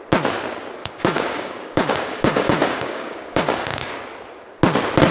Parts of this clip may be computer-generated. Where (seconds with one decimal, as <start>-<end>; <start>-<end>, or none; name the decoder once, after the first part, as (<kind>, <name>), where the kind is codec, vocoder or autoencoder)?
0.8-3.9 (codec, DAC)

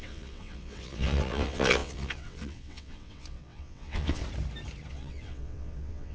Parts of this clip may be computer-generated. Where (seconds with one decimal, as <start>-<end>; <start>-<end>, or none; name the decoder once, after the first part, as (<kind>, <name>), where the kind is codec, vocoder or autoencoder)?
0.0-4.2 (vocoder, WaveNeXt); 4.9-6.1